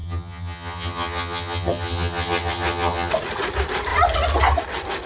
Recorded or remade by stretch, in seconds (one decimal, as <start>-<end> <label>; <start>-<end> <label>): 0.0-3.1 remade; 3.1-5.1 recorded